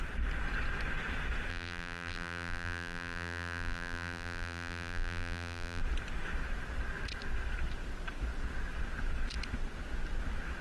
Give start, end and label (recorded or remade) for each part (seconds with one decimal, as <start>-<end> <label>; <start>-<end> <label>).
0.0-1.5 recorded; 1.5-5.8 remade; 5.8-10.6 recorded